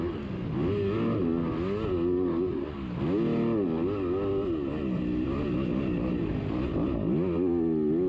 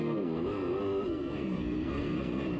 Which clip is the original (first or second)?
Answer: first